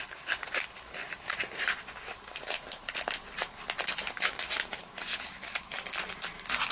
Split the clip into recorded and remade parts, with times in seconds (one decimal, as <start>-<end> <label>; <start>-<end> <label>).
0.0-6.7 recorded